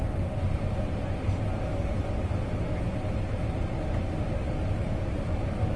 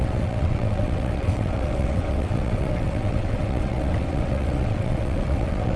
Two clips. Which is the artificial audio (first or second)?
second